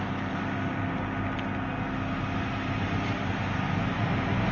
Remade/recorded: recorded